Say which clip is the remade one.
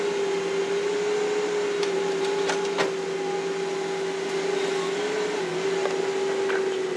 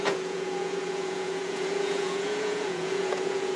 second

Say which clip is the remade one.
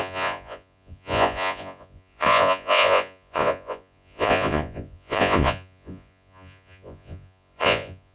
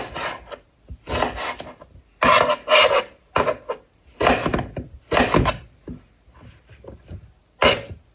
first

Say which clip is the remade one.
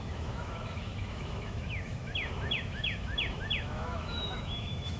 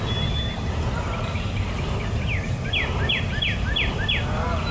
first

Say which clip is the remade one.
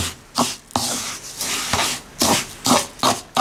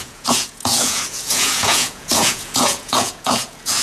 second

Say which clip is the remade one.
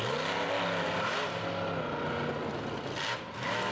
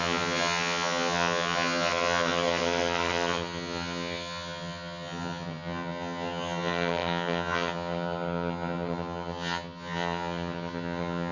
second